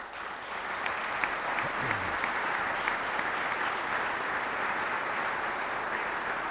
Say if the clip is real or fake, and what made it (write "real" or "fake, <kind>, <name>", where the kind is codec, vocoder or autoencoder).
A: real